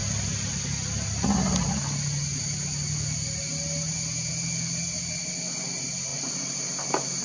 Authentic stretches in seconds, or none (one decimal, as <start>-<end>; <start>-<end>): 0.0-7.2